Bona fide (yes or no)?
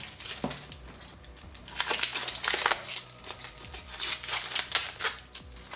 yes